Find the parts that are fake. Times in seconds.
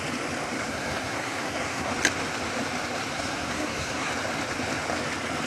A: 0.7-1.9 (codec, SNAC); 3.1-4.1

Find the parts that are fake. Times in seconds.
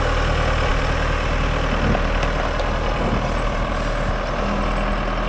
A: none